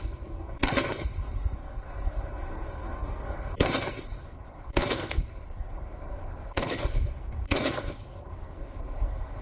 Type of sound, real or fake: fake